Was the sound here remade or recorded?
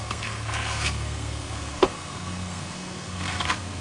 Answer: remade